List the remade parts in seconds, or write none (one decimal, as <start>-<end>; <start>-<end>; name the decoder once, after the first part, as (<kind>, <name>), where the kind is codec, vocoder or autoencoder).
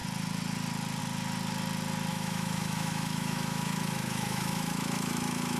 2.1-5.6 (autoencoder, DAC-VAE)